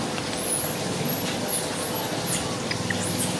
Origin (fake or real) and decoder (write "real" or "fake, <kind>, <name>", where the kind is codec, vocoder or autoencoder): real